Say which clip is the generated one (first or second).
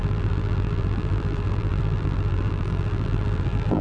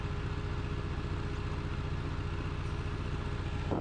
first